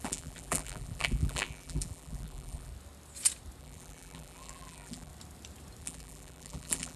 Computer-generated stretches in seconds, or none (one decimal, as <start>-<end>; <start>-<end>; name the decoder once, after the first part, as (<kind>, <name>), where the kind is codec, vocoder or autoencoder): 0.0-2.7 (vocoder, BigVGAN v2); 3.6-5.1; 5.8-7.0